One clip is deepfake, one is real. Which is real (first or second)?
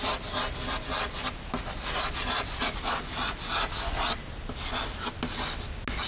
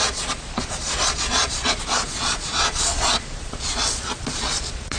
first